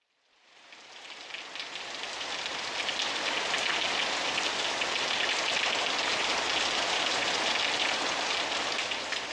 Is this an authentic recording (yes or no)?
yes